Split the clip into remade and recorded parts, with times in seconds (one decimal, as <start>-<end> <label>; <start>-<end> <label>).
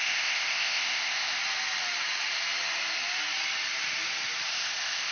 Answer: 0.0-1.4 remade; 1.4-4.5 recorded; 4.5-5.1 remade